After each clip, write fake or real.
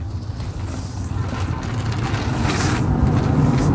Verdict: real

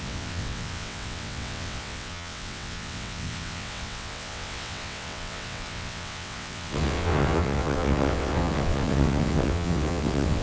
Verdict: fake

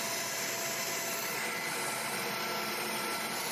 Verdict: real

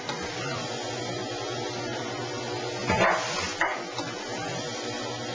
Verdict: real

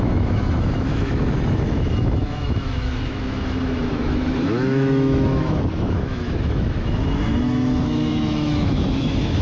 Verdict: fake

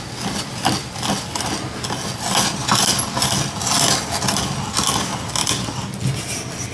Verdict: real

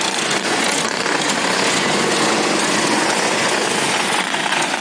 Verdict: fake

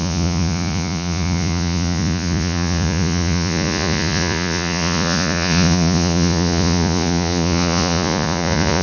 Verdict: fake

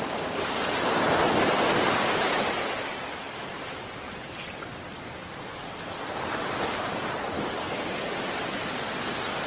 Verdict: real